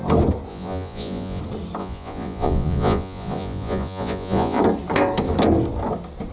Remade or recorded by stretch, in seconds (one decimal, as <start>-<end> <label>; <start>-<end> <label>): 0.0-0.5 recorded; 0.5-1.4 remade; 1.4-1.8 recorded; 1.8-4.6 remade; 4.6-6.3 recorded